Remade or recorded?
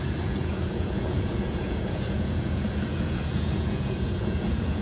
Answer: remade